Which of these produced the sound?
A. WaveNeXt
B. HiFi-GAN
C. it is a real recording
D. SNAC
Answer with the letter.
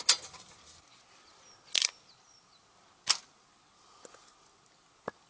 C